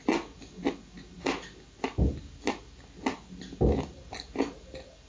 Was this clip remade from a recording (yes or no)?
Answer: no